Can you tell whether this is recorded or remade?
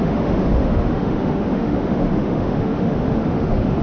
remade